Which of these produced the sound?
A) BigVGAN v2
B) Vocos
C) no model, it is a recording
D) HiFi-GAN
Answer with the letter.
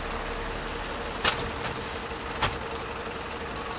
C